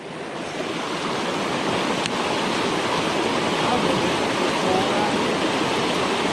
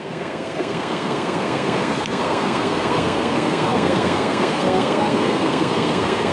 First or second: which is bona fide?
first